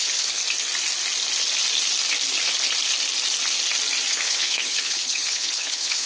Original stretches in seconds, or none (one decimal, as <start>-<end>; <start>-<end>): 0.4-4.1

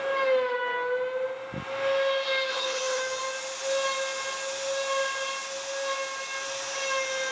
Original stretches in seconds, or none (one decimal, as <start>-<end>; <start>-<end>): 0.0-2.5; 3.0-7.3

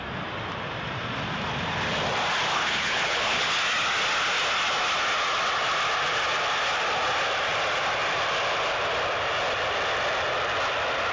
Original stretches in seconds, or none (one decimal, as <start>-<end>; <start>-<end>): 0.0-2.5; 3.5-11.1

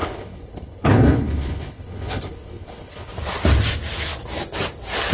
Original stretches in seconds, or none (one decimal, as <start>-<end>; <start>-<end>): 3.1-5.1

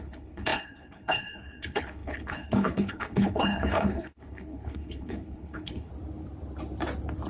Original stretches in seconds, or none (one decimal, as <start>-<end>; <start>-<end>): 5.9-7.3